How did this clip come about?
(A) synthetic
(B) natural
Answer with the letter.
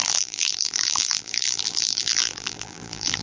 A